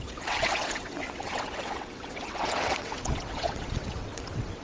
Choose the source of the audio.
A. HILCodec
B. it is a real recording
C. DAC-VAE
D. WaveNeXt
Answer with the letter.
D